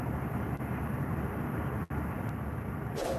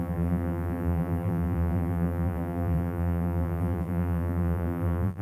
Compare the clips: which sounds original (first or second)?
first